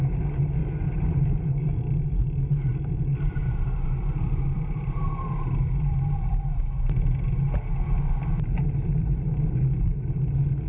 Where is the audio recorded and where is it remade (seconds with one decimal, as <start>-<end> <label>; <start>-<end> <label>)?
0.0-0.6 recorded; 0.6-5.6 remade; 5.6-10.7 recorded